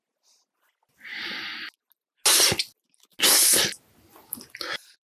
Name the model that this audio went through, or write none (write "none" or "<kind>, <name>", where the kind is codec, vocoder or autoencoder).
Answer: none